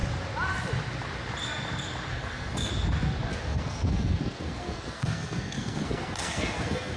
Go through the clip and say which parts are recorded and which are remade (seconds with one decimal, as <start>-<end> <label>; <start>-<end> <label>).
0.0-2.1 recorded; 2.1-2.7 remade; 2.7-3.3 recorded; 3.3-7.0 remade

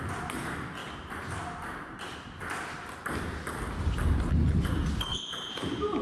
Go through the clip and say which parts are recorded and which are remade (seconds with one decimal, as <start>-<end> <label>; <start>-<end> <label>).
0.0-5.1 recorded; 5.1-6.0 remade

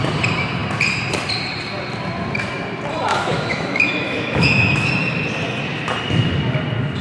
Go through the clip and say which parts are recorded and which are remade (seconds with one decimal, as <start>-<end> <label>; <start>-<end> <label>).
0.0-3.1 recorded; 3.1-4.9 remade; 4.9-7.0 recorded